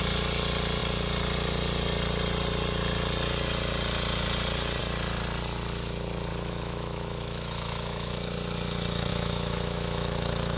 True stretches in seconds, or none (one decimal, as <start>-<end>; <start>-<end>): 0.0-6.3; 8.1-9.1